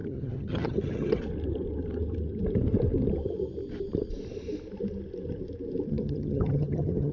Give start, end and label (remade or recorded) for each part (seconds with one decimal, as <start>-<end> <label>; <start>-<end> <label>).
0.0-1.2 remade; 1.2-5.9 recorded; 5.9-7.1 remade

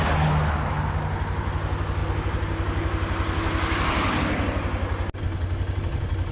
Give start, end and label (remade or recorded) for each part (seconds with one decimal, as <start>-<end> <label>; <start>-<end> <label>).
0.0-6.3 recorded

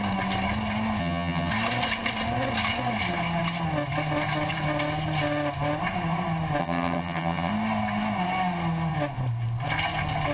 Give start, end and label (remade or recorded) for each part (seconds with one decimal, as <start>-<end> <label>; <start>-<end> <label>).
0.0-1.0 recorded; 1.0-1.5 remade; 1.5-6.6 recorded; 6.6-7.5 remade; 7.5-10.3 recorded

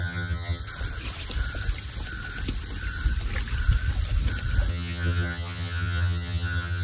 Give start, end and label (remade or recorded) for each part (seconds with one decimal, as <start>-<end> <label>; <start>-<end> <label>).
0.0-0.6 remade; 0.6-4.7 recorded; 4.7-6.8 remade